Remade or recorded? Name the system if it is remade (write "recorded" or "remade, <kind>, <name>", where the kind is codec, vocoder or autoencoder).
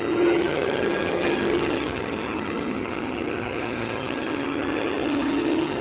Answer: remade, vocoder, HiFi-GAN